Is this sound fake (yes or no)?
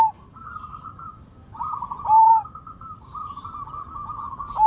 no